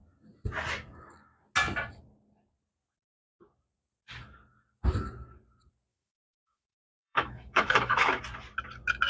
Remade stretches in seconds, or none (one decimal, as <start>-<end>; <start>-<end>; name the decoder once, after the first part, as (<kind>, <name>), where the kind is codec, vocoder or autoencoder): 5.9-8.2 (autoencoder, DAC-VAE)